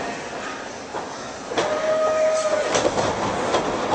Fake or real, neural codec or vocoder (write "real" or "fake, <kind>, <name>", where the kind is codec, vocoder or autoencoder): real